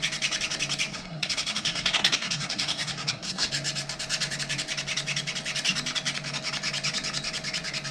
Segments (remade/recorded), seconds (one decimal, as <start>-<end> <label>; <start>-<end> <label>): 0.0-0.9 recorded; 0.9-3.5 remade; 3.5-7.9 recorded